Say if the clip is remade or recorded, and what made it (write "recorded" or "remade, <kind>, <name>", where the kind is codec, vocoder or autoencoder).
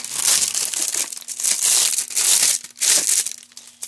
recorded